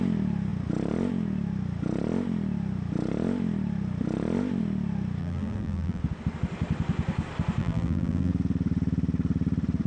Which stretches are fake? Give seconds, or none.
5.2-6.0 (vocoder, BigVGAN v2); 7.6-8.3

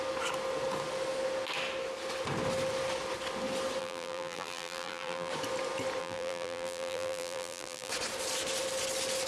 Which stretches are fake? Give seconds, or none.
3.8-5.3 (vocoder, BigVGAN v2); 6.0-7.9

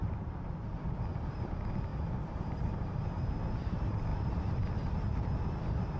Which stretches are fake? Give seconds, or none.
0.0-0.5 (vocoder, BigVGAN v2); 1.9-3.3; 4.1-4.6

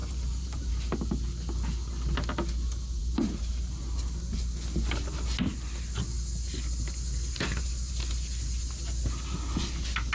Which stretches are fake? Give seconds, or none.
0.0-0.7 (vocoder, BigVGAN v2); 3.0-3.8; 7.3-8.1

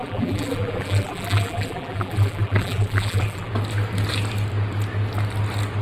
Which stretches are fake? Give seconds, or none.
0.0-3.5 (vocoder, BigVGAN v2)

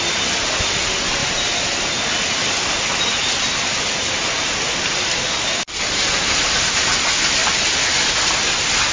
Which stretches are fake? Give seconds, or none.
none

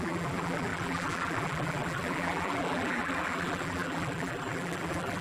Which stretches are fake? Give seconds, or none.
0.0-5.2 (vocoder, BigVGAN v2)

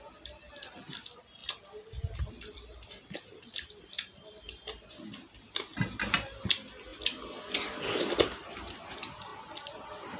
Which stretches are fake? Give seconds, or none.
none